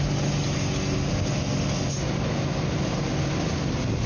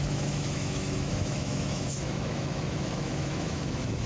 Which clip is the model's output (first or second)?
second